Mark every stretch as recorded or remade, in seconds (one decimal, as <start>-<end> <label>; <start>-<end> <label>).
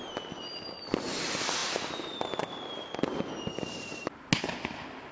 0.0-5.1 recorded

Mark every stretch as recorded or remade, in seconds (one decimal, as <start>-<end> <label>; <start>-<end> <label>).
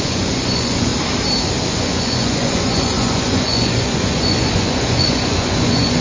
0.0-0.9 remade; 0.9-1.7 recorded; 1.7-6.0 remade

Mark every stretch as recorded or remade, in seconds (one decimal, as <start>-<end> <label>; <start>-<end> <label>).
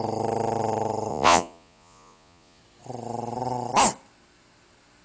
0.0-1.1 recorded; 1.1-2.6 remade; 2.6-5.0 recorded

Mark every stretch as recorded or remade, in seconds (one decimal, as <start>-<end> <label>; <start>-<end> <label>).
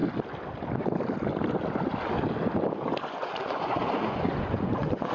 0.0-3.1 recorded; 3.1-5.1 remade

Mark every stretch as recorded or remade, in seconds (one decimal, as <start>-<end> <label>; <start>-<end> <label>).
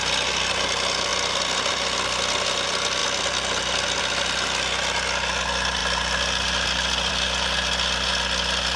0.0-8.8 recorded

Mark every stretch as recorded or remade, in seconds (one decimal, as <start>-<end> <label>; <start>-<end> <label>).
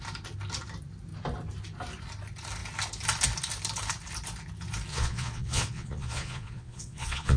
0.0-4.9 recorded; 4.9-7.4 remade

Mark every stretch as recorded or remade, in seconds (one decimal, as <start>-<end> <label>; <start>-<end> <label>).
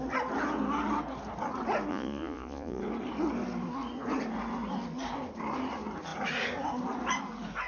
0.0-1.9 recorded; 1.9-2.8 remade; 2.8-7.7 recorded